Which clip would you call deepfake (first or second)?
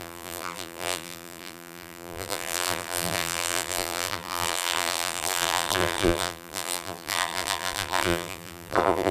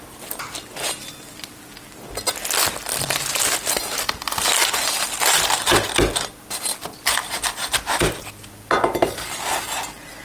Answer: first